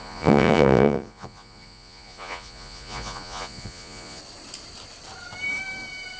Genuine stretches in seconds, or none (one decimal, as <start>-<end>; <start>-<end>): 4.2-6.2